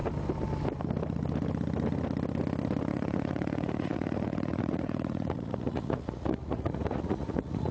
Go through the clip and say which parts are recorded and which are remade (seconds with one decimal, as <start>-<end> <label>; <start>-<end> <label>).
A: 0.0-2.9 recorded; 2.9-7.7 remade